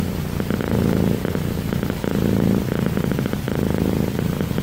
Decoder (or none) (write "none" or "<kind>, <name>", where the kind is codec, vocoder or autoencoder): none